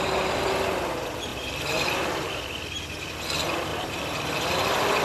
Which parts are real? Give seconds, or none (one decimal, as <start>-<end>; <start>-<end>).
0.0-1.3; 2.4-3.7; 4.4-5.0